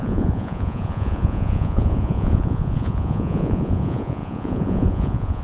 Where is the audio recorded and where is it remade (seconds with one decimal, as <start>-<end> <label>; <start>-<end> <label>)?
0.0-5.4 remade